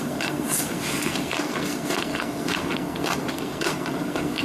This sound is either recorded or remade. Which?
remade